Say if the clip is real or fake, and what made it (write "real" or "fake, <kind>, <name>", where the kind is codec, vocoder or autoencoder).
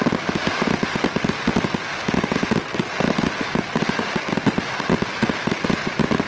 real